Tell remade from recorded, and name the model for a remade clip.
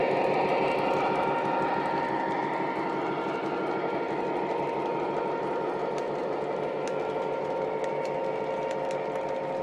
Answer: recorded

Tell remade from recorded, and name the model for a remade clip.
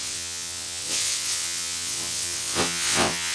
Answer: remade, vocoder, WaveNeXt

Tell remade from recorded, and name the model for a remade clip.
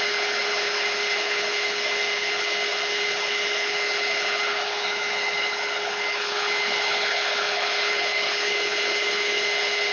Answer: remade, codec, HILCodec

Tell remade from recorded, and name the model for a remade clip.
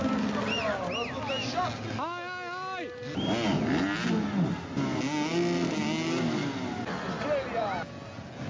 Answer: recorded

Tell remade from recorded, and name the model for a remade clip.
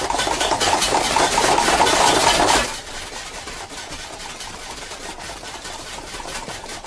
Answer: remade, vocoder, BigVGAN v2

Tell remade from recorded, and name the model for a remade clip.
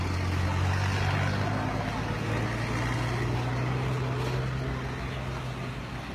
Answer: recorded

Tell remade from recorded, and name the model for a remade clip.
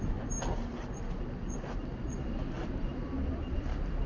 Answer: recorded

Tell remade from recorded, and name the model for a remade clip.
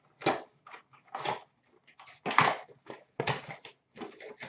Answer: recorded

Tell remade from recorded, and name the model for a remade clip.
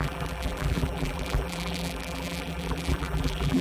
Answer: remade, vocoder, BigVGAN v2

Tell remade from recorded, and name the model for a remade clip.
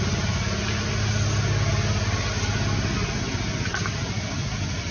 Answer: recorded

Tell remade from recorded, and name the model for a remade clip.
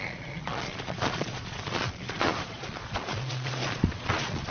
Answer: remade, vocoder, Vocos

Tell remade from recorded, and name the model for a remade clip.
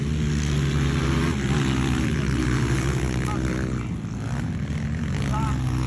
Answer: recorded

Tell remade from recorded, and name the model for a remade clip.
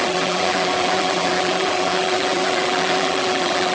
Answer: remade, vocoder, BigVGAN v2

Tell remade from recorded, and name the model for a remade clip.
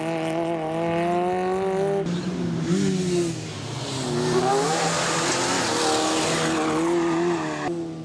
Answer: recorded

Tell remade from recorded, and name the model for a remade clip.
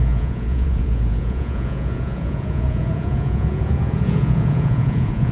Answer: remade, vocoder, Vocos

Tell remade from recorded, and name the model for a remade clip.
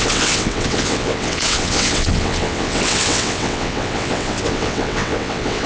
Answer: remade, vocoder, WaveNeXt